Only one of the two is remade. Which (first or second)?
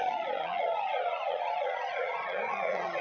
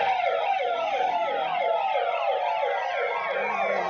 first